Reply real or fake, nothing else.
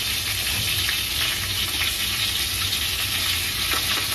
real